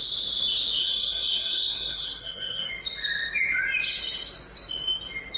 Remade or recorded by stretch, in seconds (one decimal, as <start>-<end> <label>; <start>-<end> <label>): 0.0-0.8 recorded; 0.8-2.7 remade; 2.7-5.4 recorded